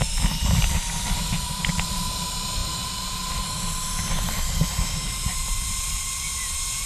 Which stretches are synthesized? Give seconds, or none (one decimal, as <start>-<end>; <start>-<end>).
none